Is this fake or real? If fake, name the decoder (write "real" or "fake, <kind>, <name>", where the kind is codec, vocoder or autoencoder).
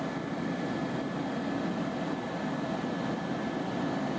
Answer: real